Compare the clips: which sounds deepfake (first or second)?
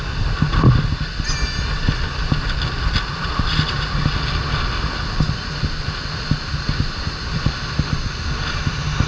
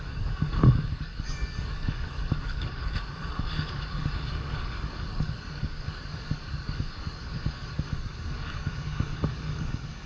second